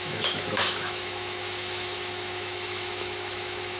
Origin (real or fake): fake